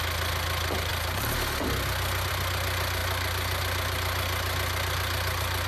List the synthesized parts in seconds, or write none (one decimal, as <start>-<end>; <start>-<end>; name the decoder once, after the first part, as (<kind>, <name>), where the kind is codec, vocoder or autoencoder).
none